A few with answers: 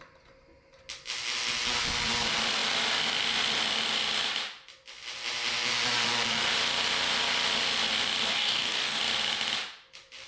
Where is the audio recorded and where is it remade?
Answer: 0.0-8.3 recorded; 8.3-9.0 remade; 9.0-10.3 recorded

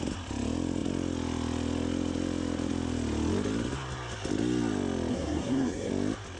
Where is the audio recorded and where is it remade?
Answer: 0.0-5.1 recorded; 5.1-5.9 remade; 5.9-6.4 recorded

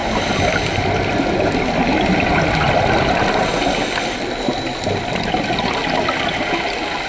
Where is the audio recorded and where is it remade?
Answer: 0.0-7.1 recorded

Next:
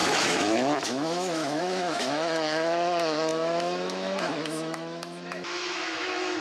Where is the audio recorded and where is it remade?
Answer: 0.0-6.4 remade

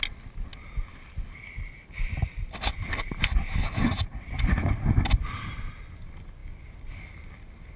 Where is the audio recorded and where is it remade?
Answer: 0.0-7.8 recorded